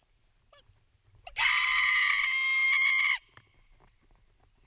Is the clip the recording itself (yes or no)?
yes